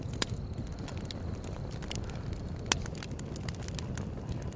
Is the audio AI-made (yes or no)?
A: no